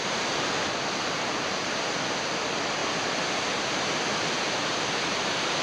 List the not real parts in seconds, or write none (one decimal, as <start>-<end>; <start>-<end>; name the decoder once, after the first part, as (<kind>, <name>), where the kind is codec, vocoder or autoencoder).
none